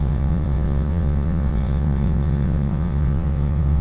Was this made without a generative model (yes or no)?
no